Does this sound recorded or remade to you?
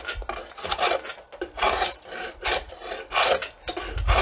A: recorded